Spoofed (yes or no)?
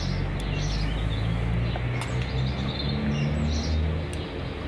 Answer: no